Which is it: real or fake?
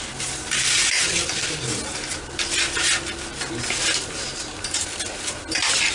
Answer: real